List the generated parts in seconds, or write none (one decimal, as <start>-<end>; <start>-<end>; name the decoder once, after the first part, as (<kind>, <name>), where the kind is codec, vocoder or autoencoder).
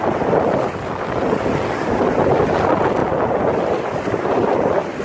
none